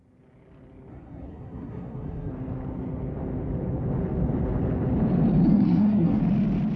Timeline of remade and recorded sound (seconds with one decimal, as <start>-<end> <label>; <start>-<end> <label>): 0.0-0.9 recorded; 0.9-2.3 remade; 2.3-5.5 recorded; 5.5-6.2 remade; 6.2-6.8 recorded